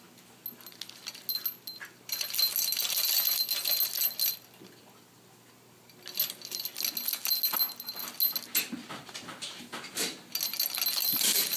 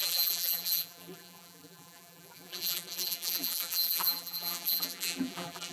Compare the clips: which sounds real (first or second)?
first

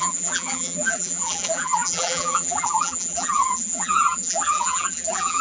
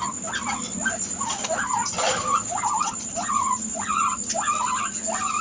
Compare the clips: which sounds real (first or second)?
second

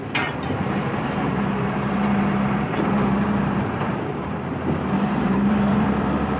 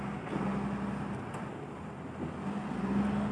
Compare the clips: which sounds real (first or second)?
second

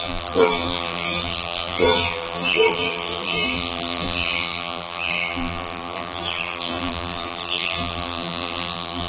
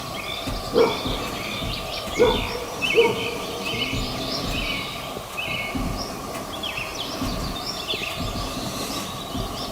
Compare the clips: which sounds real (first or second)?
second